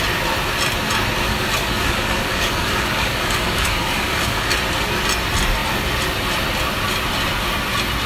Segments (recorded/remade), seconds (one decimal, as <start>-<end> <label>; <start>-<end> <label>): 0.0-1.3 recorded; 1.3-4.5 remade; 4.5-8.1 recorded